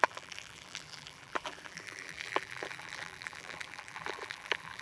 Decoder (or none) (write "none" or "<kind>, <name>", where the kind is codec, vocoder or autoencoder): vocoder, BigVGAN v2